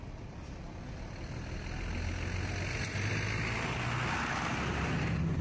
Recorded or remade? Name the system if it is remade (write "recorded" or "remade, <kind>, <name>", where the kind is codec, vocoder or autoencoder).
recorded